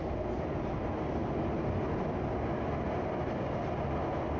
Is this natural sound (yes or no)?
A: yes